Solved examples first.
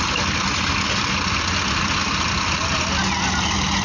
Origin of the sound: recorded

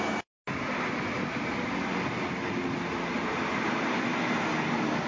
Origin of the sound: recorded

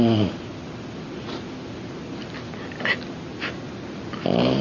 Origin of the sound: recorded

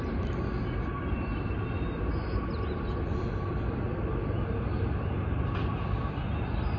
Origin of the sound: recorded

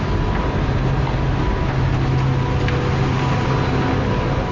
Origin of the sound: recorded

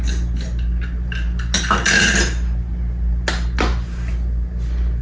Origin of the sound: recorded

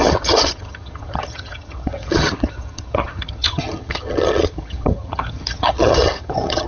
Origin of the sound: remade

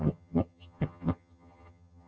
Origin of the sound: remade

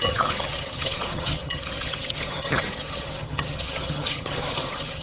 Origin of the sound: remade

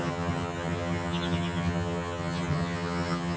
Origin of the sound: remade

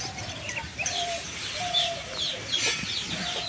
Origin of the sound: recorded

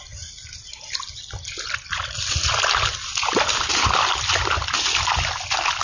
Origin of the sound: recorded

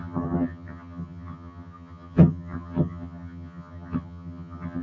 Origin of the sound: remade